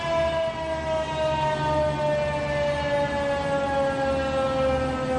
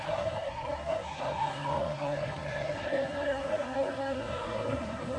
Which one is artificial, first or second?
second